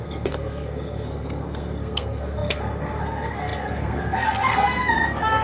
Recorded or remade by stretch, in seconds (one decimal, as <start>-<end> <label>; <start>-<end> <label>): 0.0-5.4 remade